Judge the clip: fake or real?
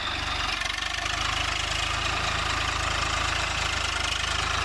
real